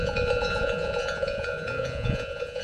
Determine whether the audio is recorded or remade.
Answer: remade